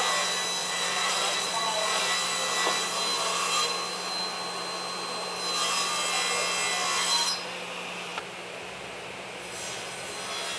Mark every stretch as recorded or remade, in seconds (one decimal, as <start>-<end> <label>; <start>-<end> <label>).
0.0-0.6 recorded; 0.6-2.0 remade; 2.0-10.6 recorded